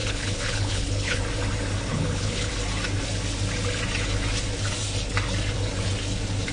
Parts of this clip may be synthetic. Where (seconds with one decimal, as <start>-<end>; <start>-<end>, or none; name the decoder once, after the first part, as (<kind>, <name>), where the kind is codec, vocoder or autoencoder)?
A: 0.0-1.2 (codec, HILCodec); 1.9-2.5